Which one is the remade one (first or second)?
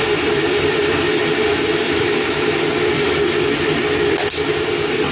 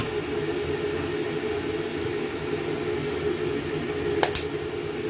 first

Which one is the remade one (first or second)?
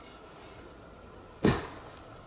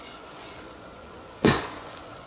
second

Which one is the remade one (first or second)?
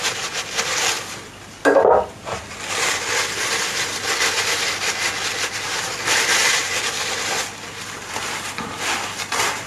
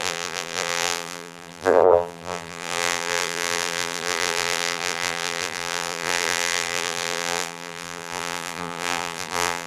second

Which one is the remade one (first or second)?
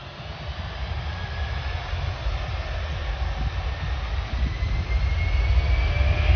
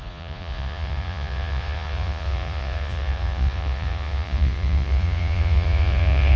second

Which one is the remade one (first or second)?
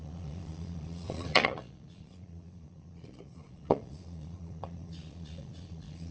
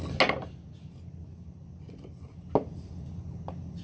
first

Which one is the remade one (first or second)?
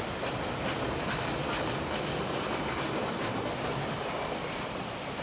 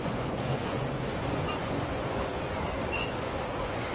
second